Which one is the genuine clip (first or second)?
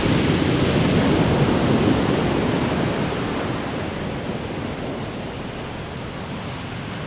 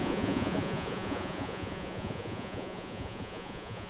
first